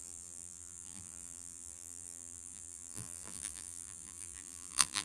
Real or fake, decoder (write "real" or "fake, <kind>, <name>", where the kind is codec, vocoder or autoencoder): fake, vocoder, BigVGAN v2